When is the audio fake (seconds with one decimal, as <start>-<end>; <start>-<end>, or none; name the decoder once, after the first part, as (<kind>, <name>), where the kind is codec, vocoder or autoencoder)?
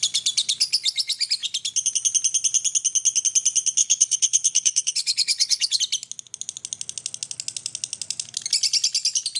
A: 3.8-5.8 (codec, HILCodec)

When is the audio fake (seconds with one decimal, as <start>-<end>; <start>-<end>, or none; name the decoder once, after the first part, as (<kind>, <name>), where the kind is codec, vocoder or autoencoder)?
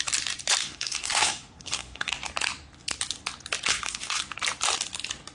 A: 0.6-2.1 (codec, SNAC); 3.7-4.2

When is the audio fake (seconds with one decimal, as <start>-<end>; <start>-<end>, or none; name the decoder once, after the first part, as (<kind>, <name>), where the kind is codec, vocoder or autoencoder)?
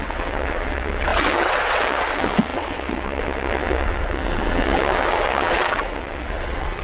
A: 0.0-6.8 (vocoder, WaveNeXt)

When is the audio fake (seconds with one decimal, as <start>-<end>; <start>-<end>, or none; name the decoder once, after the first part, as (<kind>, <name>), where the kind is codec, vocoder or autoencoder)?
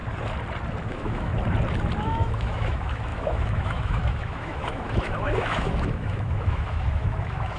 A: 0.9-1.3 (autoencoder, DAC-VAE); 2.0-7.6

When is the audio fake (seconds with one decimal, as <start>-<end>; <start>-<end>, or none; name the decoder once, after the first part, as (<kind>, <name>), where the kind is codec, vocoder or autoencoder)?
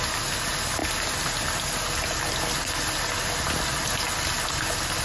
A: none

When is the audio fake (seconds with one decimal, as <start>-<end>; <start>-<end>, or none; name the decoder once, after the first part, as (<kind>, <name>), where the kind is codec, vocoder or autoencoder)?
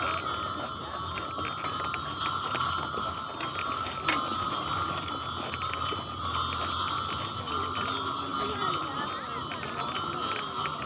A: none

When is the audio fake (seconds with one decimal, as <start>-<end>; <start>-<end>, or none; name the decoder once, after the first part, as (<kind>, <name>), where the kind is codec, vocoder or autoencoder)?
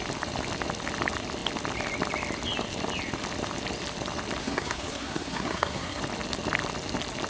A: 4.4-6.0 (codec, SNAC)